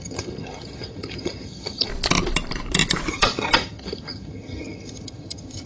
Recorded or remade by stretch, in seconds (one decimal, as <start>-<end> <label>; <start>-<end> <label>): 0.0-1.9 remade; 1.9-3.1 recorded; 3.1-5.7 remade